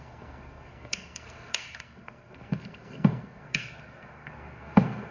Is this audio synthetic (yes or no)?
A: yes